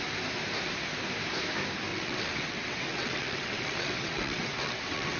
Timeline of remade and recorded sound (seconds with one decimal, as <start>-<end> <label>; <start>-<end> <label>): 0.0-1.9 recorded; 1.9-5.2 remade